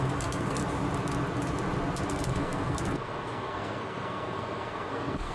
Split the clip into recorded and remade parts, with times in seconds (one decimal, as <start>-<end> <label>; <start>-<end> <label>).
0.0-0.6 remade; 0.6-2.1 recorded; 2.1-5.3 remade